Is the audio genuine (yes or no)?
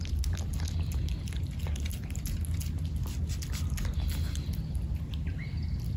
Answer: yes